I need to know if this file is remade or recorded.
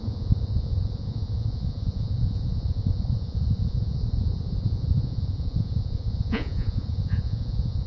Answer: remade